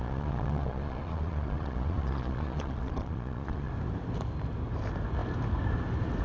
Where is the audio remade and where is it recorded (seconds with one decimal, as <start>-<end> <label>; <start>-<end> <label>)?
0.0-3.7 remade; 3.7-6.2 recorded